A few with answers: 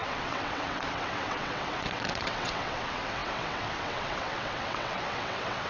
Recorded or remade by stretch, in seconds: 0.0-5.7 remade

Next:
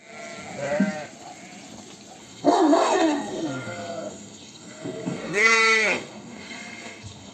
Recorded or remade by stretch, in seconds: 0.0-2.2 recorded; 2.2-7.3 remade